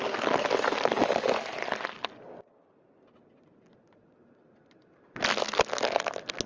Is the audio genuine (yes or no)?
no